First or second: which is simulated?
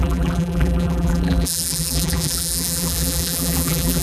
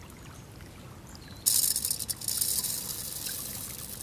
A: first